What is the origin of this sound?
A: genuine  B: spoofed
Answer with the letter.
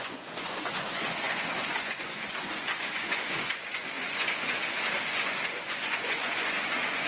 B